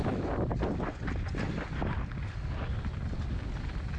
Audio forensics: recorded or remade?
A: recorded